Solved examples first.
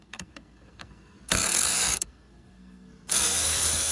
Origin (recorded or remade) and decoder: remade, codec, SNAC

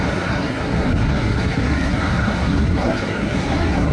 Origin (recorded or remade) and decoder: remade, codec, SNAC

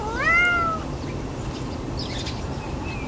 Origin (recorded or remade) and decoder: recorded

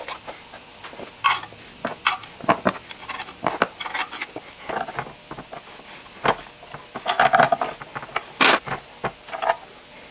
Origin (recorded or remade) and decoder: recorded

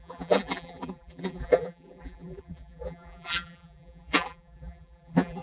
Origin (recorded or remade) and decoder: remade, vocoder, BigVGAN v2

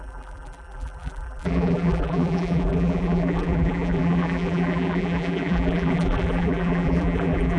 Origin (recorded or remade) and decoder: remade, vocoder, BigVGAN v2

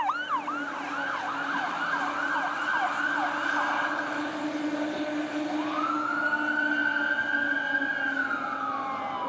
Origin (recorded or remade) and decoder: recorded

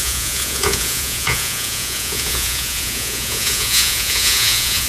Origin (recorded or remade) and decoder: remade, vocoder, Vocos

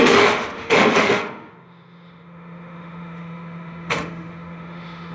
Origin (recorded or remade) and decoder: remade, autoencoder, DAC-VAE